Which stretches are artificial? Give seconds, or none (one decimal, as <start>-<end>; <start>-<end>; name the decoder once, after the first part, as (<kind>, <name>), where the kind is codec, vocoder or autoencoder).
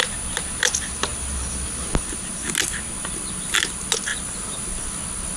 4.1-4.7 (vocoder, BigVGAN v2)